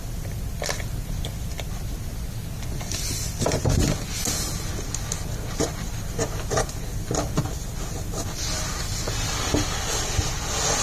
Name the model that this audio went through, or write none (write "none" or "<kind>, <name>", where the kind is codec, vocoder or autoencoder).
none